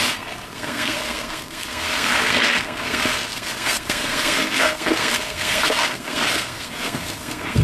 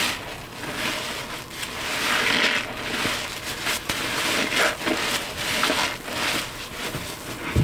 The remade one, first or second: first